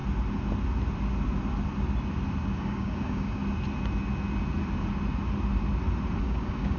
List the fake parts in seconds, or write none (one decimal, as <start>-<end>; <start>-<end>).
2.6-3.4; 6.2-6.8